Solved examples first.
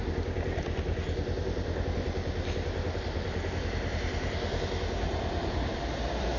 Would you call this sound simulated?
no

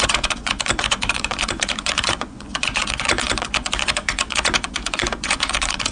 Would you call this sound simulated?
yes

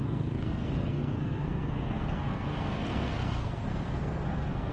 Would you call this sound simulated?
yes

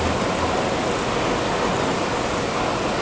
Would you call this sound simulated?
no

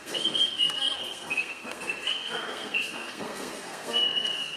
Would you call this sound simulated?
yes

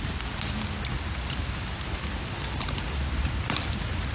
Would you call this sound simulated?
no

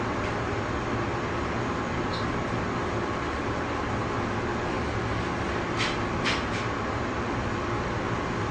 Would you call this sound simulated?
no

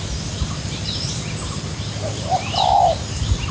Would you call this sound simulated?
no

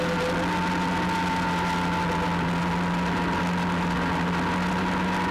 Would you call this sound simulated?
no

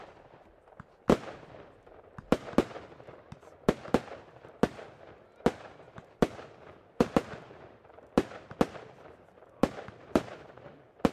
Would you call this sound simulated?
no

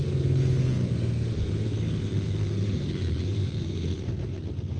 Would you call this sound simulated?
yes